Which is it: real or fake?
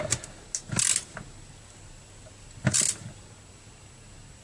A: real